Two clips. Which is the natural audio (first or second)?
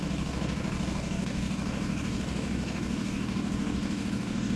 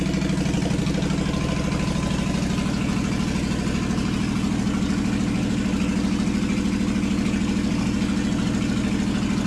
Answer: second